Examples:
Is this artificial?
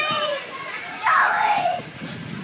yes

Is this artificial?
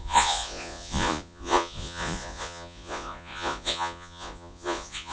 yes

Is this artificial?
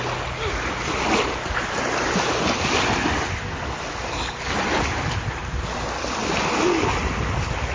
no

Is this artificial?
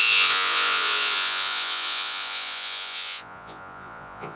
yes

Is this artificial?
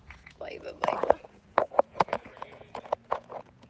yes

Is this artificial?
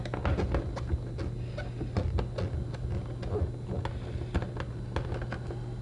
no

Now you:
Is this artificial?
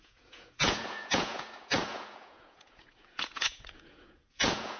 yes